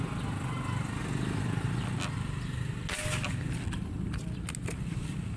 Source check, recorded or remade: recorded